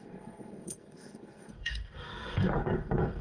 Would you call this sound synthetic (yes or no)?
yes